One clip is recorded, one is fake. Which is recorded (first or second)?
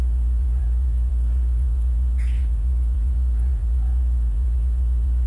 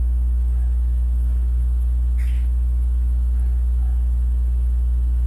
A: second